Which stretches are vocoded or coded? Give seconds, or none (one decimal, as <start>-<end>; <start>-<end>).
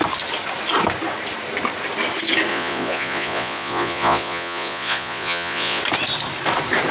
2.5-5.8